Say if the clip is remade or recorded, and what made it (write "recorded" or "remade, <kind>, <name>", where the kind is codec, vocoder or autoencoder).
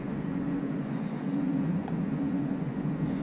remade, vocoder, Vocos